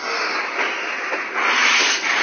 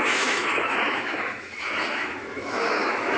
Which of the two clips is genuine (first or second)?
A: first